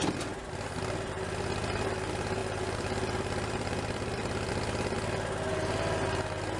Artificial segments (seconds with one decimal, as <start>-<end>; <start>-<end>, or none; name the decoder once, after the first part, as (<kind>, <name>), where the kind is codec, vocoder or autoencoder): 2.4-4.5 (vocoder, BigVGAN v2)